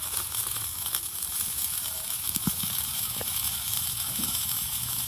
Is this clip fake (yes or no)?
yes